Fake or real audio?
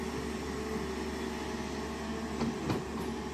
real